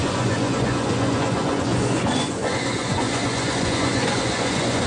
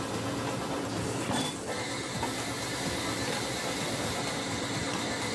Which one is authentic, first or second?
second